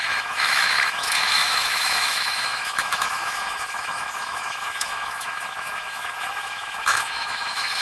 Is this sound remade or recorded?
remade